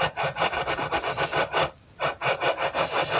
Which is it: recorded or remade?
recorded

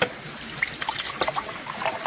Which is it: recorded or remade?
recorded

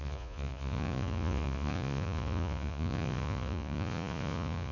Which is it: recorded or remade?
remade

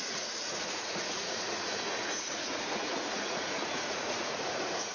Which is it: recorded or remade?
remade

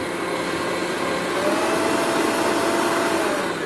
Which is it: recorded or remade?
recorded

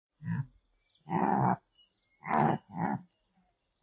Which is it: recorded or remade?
recorded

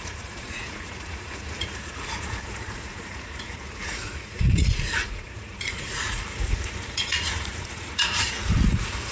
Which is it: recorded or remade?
remade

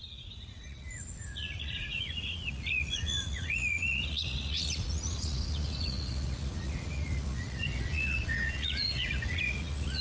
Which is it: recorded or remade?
remade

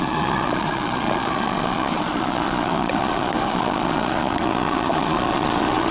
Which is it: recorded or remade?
remade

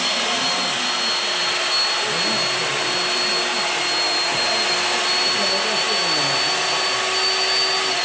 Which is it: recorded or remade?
recorded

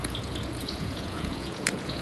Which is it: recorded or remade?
remade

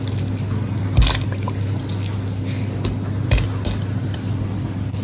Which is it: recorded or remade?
recorded